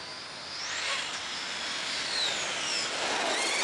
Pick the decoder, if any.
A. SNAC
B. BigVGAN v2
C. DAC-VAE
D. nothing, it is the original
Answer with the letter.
D